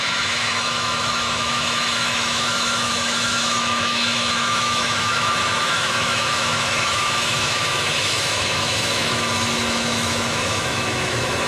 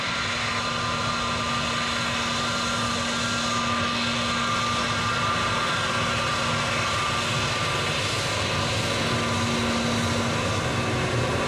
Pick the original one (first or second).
second